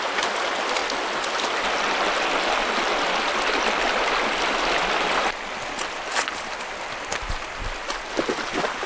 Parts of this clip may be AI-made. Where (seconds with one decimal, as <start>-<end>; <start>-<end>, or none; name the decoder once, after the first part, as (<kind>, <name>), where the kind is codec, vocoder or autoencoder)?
none